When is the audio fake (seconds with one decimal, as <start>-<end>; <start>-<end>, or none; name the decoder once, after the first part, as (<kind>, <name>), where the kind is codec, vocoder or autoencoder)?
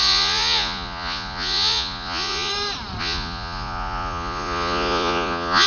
0.0-2.5 (vocoder, Vocos); 3.0-5.7